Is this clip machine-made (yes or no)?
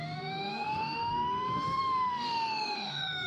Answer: yes